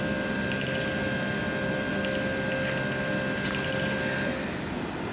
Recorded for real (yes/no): yes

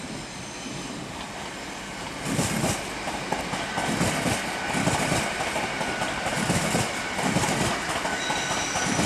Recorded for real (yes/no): yes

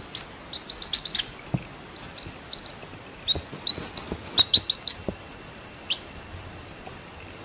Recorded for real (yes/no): yes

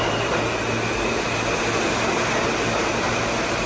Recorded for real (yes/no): yes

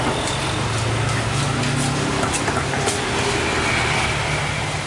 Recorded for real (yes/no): yes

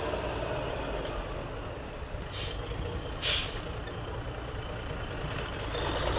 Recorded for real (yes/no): yes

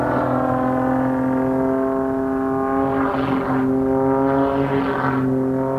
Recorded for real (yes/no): yes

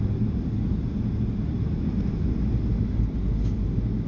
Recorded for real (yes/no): yes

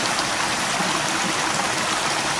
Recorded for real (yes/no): yes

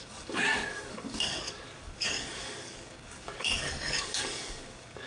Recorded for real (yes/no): no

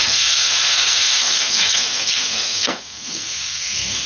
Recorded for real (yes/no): no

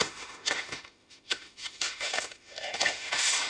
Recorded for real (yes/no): no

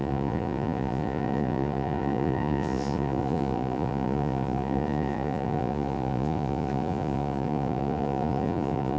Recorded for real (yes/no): no